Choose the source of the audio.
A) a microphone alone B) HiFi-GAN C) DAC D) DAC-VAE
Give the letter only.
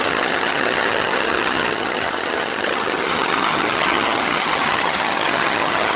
B